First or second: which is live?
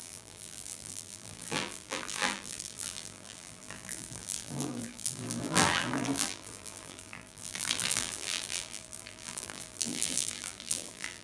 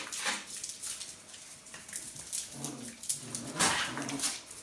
second